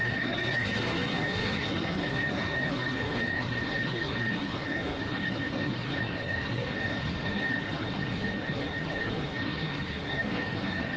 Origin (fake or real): fake